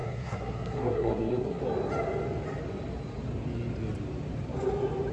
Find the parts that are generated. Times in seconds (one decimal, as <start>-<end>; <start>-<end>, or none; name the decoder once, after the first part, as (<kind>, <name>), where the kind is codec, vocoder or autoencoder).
0.0-1.6 (codec, SNAC)